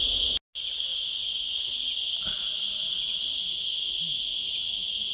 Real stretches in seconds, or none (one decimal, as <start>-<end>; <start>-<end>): 0.0-5.1